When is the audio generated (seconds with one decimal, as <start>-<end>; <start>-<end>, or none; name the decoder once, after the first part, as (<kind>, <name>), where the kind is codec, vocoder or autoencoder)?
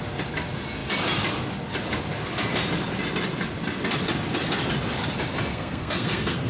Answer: 5.5-6.5 (codec, SNAC)